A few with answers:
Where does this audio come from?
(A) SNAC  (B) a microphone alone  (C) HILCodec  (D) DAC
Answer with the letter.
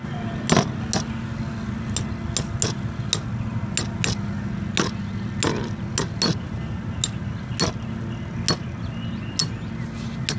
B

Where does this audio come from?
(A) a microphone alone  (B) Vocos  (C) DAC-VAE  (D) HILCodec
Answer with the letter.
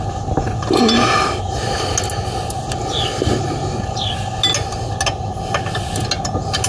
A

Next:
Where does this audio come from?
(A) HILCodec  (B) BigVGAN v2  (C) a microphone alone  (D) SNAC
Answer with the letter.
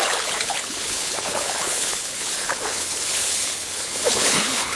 A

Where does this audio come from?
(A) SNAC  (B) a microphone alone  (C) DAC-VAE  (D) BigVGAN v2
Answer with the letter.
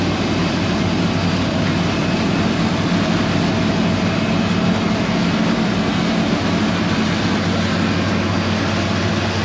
B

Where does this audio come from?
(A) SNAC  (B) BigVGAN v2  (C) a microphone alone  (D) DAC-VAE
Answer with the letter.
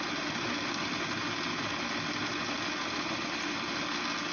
C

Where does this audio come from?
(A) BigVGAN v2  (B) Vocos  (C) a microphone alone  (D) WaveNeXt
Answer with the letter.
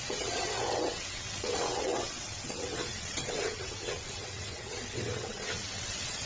D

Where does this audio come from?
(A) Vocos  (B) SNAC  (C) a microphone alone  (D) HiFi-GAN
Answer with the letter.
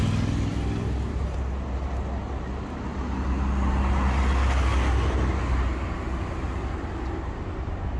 C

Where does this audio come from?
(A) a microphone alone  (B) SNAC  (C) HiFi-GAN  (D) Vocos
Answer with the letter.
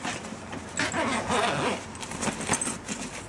A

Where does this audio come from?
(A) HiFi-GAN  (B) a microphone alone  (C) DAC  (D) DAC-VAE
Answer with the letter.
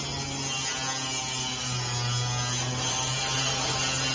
B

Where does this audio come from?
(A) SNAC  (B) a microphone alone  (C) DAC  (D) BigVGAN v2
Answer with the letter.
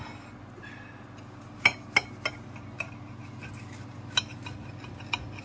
B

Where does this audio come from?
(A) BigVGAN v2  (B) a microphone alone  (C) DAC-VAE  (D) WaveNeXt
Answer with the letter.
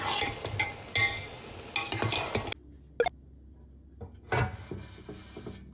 B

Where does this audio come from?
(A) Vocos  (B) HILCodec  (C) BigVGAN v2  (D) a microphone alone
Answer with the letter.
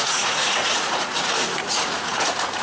A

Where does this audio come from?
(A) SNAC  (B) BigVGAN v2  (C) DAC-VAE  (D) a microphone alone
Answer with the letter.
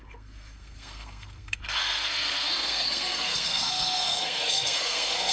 A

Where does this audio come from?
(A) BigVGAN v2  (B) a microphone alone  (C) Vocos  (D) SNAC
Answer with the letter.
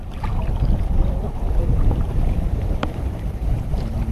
A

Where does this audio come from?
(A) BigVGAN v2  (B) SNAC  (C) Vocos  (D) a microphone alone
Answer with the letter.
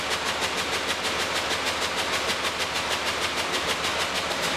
D